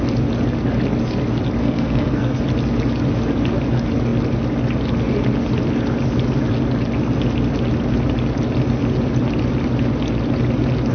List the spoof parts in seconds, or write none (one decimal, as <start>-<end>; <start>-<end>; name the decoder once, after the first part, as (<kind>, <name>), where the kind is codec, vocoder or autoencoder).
1.6-2.4 (codec, SNAC)